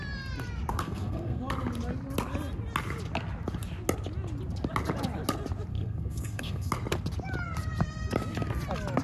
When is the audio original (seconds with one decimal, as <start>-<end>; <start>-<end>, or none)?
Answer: 0.0-0.7; 1.4-5.7; 6.7-9.0